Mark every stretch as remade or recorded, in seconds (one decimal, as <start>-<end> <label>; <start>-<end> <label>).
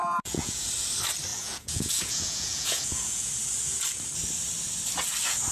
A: 0.0-0.7 remade; 0.7-1.3 recorded; 1.3-3.3 remade; 3.3-5.5 recorded